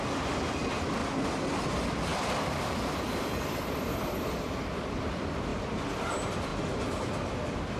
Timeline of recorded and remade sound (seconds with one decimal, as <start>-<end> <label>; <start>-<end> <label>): 0.0-1.0 remade; 1.0-1.6 recorded; 1.6-6.5 remade; 6.5-7.3 recorded; 7.3-7.8 remade